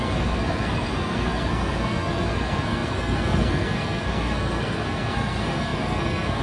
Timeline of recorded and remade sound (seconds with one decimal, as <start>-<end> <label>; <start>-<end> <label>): 0.0-6.4 remade

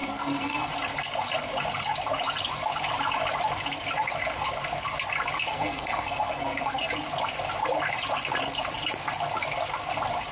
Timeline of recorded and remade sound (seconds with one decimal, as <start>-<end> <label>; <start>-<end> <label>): 0.0-0.7 remade; 0.7-5.5 recorded; 5.5-6.9 remade; 6.9-10.3 recorded

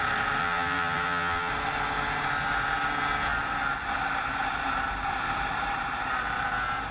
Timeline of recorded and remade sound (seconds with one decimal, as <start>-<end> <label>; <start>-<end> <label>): 0.0-0.4 recorded; 0.4-1.5 remade; 1.5-6.9 recorded

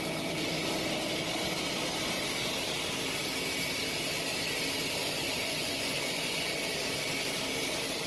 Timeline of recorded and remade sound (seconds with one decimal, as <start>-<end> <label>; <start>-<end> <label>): 0.0-5.0 recorded; 5.0-6.5 remade; 6.5-8.1 recorded

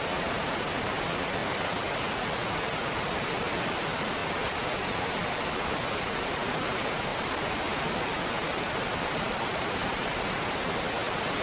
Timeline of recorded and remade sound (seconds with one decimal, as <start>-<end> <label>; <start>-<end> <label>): 0.0-11.4 recorded

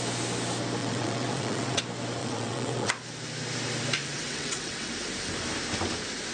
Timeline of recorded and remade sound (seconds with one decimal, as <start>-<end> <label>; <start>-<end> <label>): 0.0-0.8 recorded; 0.8-1.8 remade; 1.8-2.2 recorded; 2.2-2.9 remade; 2.9-4.0 recorded; 4.0-4.9 remade; 4.9-6.3 recorded

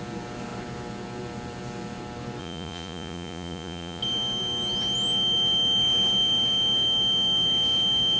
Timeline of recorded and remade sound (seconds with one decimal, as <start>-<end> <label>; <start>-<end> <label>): 0.0-2.4 recorded; 2.4-4.0 remade; 4.0-8.2 recorded